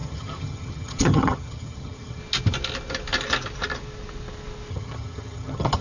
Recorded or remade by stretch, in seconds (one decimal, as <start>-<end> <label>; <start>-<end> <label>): 0.0-2.2 remade; 2.2-4.7 recorded; 4.7-5.8 remade